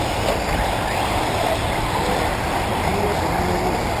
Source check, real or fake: real